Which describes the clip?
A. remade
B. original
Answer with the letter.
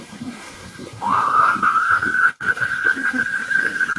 A